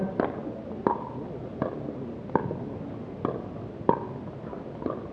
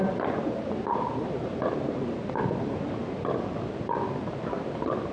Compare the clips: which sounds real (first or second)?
first